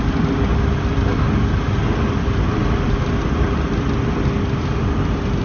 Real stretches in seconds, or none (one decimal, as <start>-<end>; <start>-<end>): 0.0-5.4